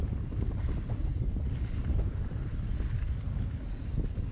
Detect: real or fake real